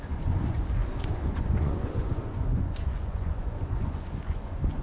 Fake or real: fake